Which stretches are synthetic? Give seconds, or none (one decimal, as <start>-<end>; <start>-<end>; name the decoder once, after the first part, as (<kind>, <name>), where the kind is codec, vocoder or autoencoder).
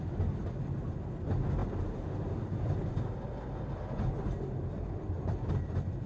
none